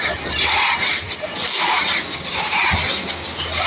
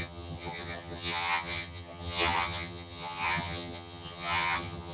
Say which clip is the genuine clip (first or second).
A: first